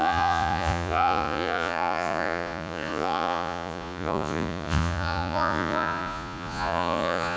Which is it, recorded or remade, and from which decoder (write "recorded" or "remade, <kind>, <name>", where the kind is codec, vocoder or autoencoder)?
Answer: remade, vocoder, Vocos